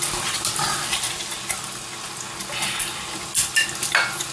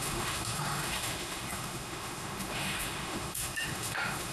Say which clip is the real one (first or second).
first